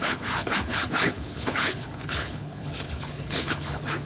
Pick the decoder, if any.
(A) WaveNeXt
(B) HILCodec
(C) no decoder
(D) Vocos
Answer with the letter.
B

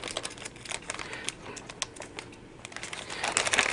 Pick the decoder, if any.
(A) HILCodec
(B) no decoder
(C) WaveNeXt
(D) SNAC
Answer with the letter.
B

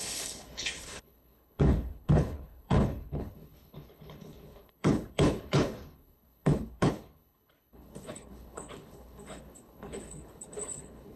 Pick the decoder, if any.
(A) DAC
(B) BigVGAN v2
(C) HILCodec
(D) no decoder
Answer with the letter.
C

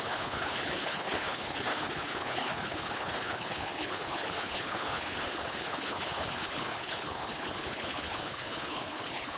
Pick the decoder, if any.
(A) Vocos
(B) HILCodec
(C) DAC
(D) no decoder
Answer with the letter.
B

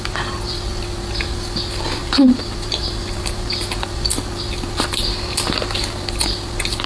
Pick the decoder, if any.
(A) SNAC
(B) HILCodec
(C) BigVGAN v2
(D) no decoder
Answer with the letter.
D